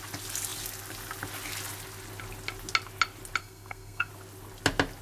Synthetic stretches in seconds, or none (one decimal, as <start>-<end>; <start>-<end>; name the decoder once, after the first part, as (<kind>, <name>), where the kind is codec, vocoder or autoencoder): 3.4-4.1 (codec, SNAC)